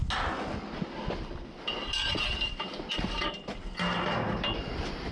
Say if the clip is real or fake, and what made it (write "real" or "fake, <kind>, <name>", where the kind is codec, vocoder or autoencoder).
real